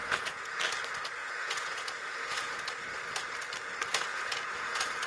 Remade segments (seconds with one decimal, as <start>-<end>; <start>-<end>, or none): 0.0-0.6; 1.2-2.6; 4.1-5.1

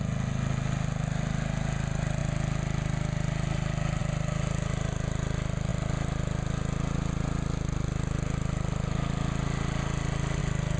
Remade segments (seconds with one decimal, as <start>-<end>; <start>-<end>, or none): none